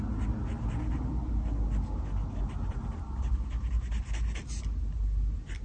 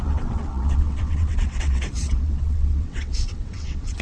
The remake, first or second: second